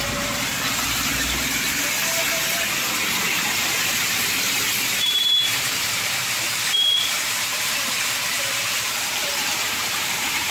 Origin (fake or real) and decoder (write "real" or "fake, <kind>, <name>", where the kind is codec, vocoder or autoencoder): fake, vocoder, BigVGAN v2